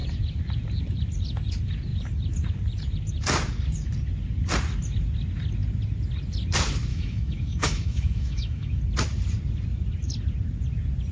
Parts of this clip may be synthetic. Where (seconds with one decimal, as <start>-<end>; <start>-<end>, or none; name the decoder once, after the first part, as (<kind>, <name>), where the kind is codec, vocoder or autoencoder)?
6.9-8.8 (autoencoder, DAC-VAE)